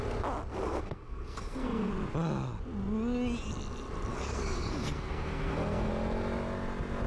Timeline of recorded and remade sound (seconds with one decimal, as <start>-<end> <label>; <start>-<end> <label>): 0.0-0.5 recorded; 0.5-1.9 remade; 1.9-4.1 recorded; 4.1-5.9 remade; 5.9-7.1 recorded